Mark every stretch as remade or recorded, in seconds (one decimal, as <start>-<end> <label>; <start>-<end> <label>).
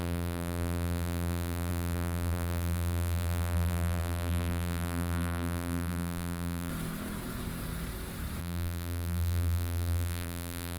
0.0-6.7 remade; 6.7-8.4 recorded; 8.4-10.8 remade